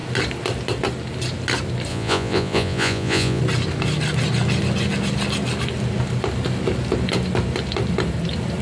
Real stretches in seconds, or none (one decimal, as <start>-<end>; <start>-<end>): 0.0-1.9; 3.4-8.6